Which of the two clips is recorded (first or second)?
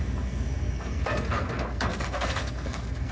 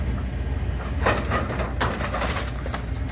second